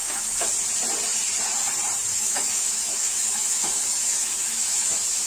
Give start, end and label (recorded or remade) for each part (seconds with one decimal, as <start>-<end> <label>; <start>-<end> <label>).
0.0-0.5 remade; 0.5-2.1 recorded; 2.1-5.3 remade